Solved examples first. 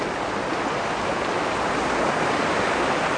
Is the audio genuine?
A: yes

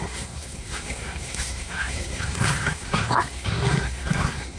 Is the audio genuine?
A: no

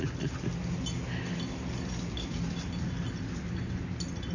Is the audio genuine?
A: yes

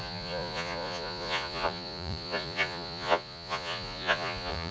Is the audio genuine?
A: no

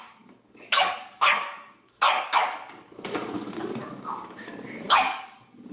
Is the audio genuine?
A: no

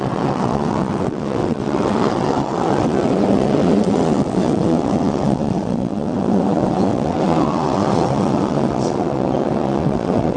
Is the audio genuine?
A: no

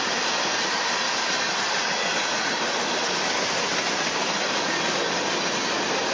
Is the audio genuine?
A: yes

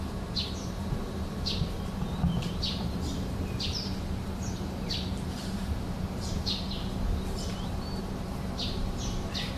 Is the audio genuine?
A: no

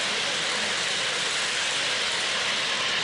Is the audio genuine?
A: yes